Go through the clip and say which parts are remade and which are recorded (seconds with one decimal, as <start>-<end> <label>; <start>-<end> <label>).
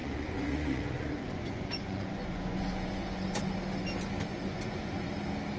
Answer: 0.0-3.4 remade; 3.4-4.3 recorded; 4.3-5.1 remade; 5.1-5.6 recorded